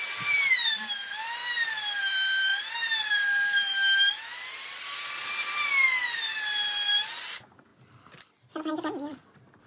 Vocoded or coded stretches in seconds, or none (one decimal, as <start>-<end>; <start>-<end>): 0.0-1.4; 2.0-9.7